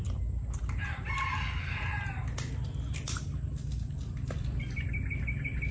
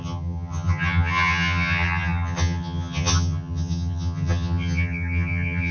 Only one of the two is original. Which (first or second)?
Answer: first